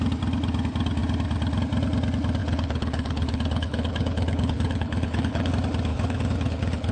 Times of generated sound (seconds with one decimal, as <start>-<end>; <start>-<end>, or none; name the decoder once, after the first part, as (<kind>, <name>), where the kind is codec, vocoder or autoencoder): 2.4-5.5 (codec, HILCodec); 5.9-6.9